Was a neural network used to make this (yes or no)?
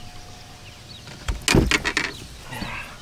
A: no